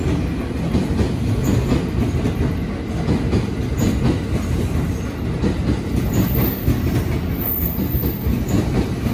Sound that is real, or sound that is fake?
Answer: real